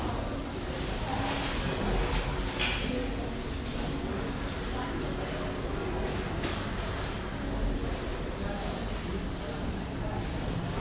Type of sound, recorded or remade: recorded